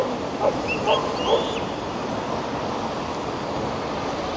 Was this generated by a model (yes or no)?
no